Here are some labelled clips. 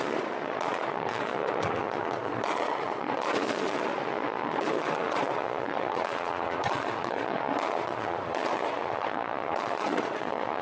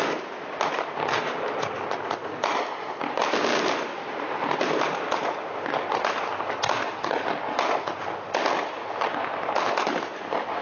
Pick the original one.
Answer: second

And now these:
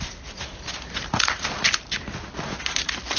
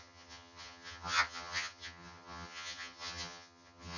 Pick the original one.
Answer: first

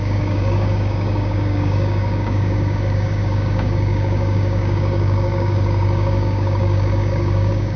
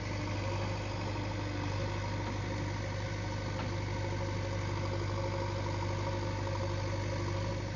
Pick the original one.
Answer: second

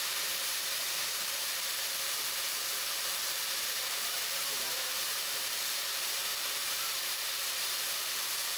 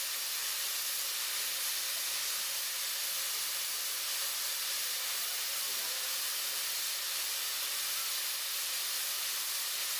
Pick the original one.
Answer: second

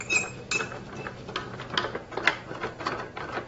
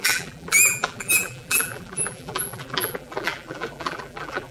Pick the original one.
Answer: first